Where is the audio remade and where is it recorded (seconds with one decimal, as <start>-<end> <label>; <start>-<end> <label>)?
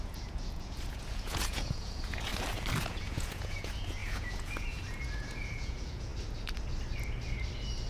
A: 0.0-2.3 remade; 2.3-2.8 recorded; 2.8-6.1 remade; 6.1-7.9 recorded